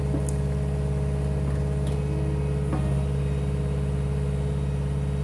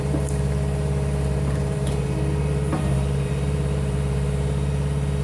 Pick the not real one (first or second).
second